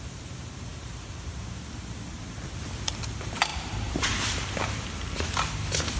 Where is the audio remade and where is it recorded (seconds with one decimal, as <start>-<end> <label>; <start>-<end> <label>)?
0.0-0.7 recorded; 0.7-1.6 remade; 1.6-3.5 recorded; 3.5-4.5 remade; 4.5-6.0 recorded